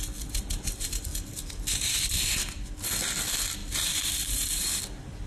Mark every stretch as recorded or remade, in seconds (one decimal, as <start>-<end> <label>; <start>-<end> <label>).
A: 0.0-3.6 recorded; 3.6-4.8 remade; 4.8-5.3 recorded